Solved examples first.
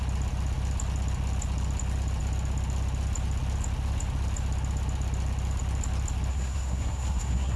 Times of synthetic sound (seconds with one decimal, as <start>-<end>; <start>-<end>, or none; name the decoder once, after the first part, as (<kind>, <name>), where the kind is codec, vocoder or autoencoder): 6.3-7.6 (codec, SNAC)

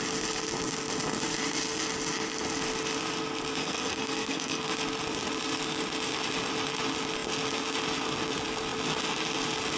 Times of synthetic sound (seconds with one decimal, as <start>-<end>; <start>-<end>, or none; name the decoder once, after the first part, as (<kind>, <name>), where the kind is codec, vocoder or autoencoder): 3.6-4.7 (codec, SNAC)

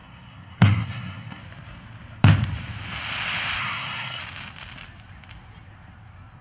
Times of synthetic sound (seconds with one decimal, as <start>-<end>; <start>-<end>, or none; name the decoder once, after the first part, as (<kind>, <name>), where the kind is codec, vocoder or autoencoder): 0.0-1.4 (codec, SNAC); 3.6-4.2

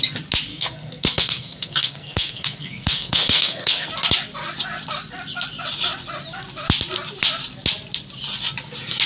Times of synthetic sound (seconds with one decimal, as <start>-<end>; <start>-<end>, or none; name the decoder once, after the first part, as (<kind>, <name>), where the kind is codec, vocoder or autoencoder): 0.5-3.9 (codec, SNAC)

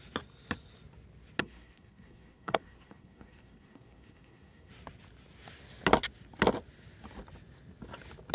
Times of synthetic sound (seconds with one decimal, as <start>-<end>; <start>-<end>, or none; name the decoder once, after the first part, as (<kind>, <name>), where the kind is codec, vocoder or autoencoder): 1.4-4.7 (codec, SNAC)

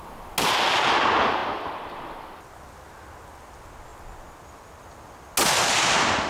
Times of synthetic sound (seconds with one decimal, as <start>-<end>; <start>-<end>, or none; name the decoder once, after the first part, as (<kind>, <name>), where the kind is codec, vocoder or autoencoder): none

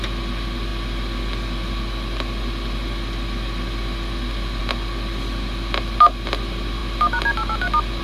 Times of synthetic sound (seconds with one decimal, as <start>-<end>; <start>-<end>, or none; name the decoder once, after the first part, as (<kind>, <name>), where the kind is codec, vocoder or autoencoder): none

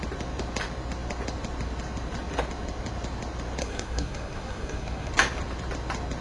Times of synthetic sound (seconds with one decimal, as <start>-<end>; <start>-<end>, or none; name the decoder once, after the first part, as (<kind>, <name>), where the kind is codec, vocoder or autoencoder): 3.6-5.1 (codec, SNAC)